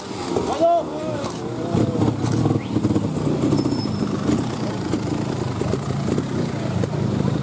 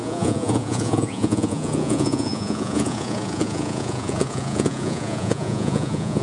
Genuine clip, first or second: first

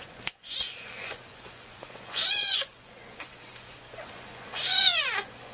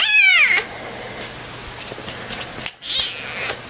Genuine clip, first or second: second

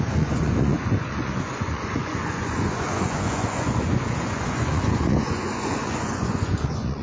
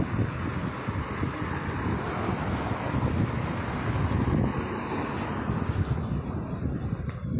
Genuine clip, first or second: second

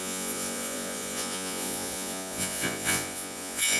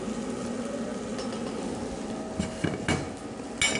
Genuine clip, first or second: second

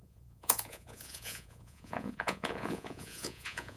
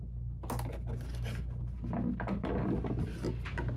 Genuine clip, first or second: second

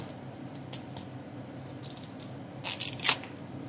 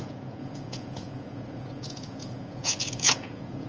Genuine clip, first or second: first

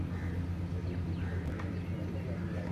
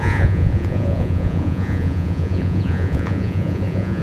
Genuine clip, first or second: first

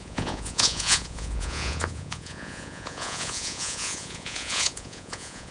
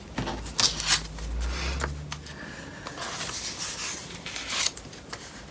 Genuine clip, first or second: second